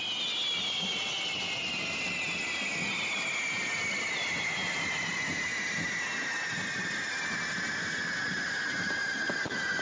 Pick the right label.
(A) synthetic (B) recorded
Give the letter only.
B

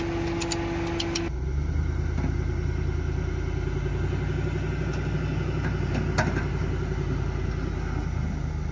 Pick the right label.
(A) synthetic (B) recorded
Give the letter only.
B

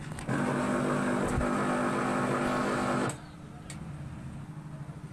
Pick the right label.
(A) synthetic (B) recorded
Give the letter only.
B